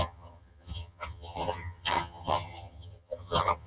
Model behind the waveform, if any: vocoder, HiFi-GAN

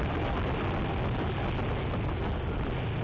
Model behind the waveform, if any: none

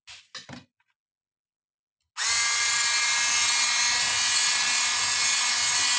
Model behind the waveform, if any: none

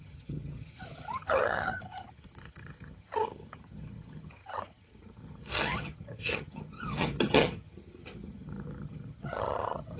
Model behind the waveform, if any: vocoder, HiFi-GAN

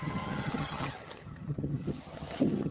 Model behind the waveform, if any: vocoder, HiFi-GAN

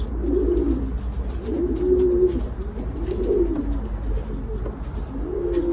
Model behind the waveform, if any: none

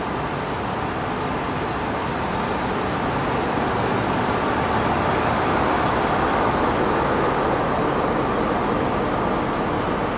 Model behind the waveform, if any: none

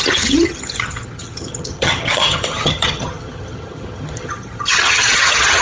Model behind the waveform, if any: vocoder, HiFi-GAN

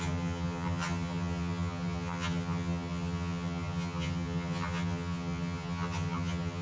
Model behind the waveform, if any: vocoder, HiFi-GAN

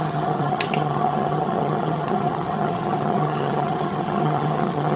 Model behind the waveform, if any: vocoder, HiFi-GAN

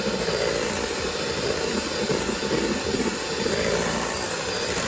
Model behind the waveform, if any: none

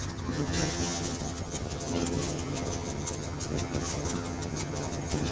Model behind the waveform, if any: vocoder, HiFi-GAN